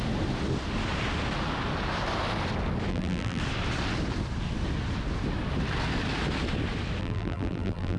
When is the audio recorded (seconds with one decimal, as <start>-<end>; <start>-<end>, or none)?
0.0-2.9; 3.4-7.0